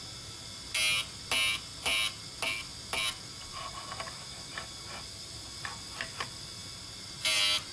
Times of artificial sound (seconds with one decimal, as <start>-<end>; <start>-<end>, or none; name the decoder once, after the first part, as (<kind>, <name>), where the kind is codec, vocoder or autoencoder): none